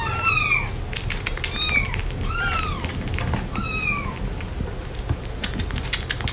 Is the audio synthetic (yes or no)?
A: no